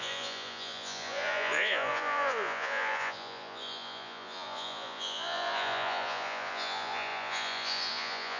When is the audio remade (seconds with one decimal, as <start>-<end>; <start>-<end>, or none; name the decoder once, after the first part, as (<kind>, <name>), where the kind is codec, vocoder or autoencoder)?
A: 0.0-8.4 (vocoder, Vocos)

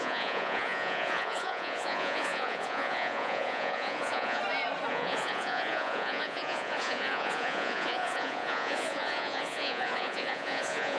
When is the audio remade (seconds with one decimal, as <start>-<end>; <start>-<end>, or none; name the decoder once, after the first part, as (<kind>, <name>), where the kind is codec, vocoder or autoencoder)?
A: 0.0-4.4 (vocoder, Vocos); 4.9-11.0

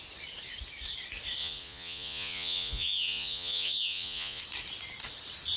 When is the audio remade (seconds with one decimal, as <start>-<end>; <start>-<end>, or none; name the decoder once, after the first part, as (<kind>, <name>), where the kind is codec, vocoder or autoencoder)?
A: 1.4-4.4 (vocoder, Vocos)

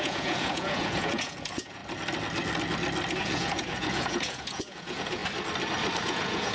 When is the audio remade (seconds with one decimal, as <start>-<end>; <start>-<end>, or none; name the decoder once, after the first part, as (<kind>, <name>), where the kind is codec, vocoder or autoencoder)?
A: 0.0-1.8 (vocoder, Vocos); 3.2-5.2; 6.0-6.5

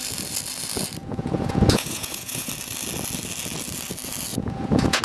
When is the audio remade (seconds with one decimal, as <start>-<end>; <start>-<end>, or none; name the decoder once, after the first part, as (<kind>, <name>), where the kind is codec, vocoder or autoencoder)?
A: 1.0-2.5 (vocoder, Vocos); 4.3-5.0

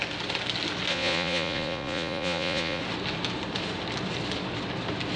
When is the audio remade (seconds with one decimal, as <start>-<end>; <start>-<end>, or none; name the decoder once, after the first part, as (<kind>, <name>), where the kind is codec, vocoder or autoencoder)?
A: 0.9-2.8 (vocoder, Vocos)

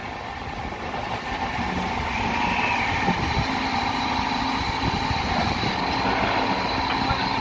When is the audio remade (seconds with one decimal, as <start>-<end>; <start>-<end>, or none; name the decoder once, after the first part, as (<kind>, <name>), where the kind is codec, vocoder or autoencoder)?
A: none